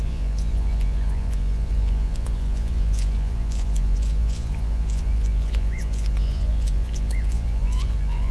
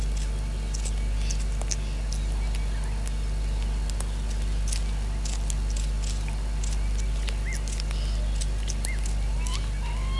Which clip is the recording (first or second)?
second